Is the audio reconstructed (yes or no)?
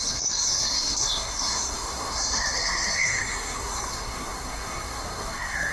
yes